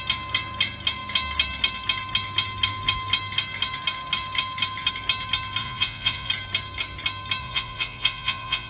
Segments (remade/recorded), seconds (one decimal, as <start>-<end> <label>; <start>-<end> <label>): 0.0-5.6 recorded; 5.6-6.3 remade; 6.3-7.4 recorded; 7.4-8.7 remade